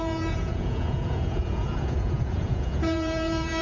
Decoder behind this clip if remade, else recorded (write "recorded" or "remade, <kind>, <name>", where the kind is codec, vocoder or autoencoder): remade, vocoder, Vocos